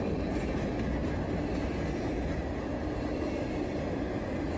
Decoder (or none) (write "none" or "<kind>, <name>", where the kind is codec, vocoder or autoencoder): none